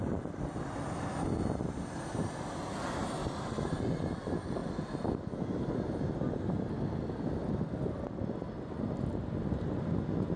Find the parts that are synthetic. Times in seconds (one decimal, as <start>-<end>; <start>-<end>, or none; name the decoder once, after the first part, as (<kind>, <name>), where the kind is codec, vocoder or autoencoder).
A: 3.2-3.8 (vocoder, BigVGAN v2)